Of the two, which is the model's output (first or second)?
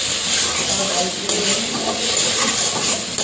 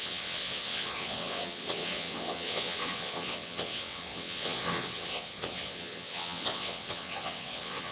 second